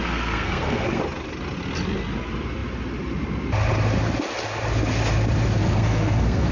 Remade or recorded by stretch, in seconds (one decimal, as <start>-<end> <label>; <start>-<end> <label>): 0.0-1.0 remade; 1.0-5.6 recorded; 5.6-6.5 remade

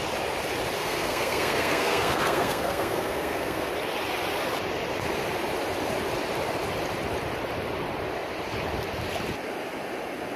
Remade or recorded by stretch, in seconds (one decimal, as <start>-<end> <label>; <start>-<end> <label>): 0.0-0.8 recorded; 0.8-3.7 remade; 3.7-10.4 recorded

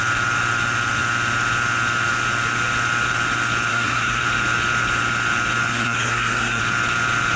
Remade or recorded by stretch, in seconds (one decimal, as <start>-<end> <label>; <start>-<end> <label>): 0.0-3.7 recorded; 3.7-4.2 remade; 4.2-5.7 recorded; 5.7-6.6 remade; 6.6-7.4 recorded

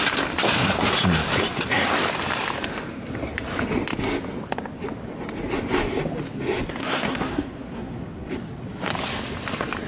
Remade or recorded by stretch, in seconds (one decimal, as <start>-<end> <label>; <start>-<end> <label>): 0.0-6.8 recorded; 6.8-8.3 remade; 8.3-9.9 recorded